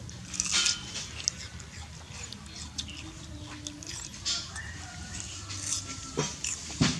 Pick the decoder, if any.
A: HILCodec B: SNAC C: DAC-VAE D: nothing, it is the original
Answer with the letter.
D